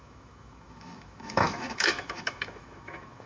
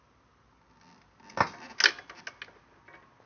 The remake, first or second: first